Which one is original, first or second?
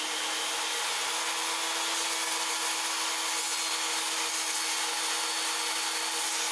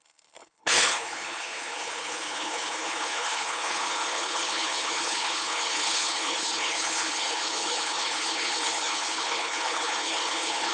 first